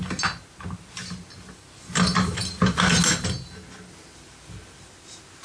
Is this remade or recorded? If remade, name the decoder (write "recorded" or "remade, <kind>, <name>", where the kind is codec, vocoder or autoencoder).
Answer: recorded